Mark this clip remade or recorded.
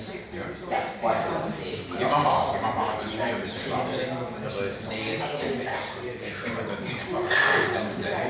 recorded